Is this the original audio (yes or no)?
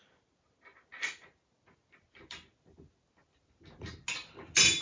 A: yes